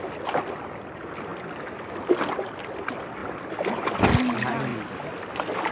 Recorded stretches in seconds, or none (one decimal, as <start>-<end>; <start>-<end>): 0.0-5.7